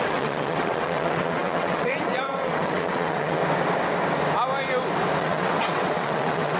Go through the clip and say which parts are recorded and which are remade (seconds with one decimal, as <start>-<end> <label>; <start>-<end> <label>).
0.0-3.4 remade; 3.4-5.2 recorded; 5.2-6.6 remade